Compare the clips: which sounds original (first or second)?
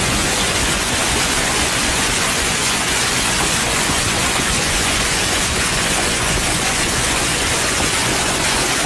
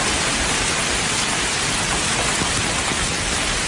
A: second